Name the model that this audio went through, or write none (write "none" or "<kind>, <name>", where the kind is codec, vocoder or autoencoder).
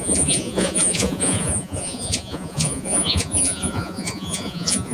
vocoder, Vocos